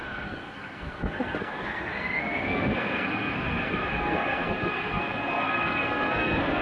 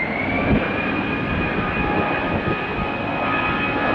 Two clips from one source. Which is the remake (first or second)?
first